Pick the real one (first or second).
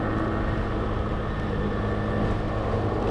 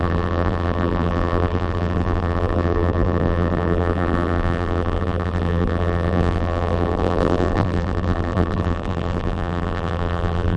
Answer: first